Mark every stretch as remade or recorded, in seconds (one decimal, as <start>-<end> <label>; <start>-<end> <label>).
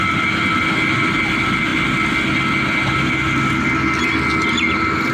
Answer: 0.0-5.1 recorded